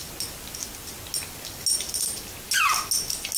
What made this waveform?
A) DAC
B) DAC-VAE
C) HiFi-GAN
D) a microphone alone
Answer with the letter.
D